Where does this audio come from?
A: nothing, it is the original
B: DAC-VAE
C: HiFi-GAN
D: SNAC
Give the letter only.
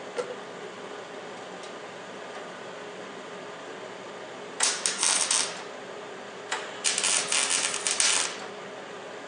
A